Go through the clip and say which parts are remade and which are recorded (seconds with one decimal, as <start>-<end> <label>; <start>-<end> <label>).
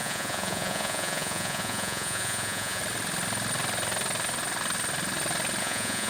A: 0.0-2.8 remade; 2.8-5.6 recorded; 5.6-6.1 remade